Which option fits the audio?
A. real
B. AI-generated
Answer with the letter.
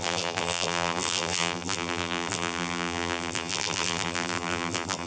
B